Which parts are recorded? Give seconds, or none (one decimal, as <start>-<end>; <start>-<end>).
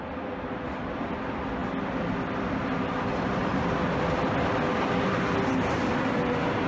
0.0-6.7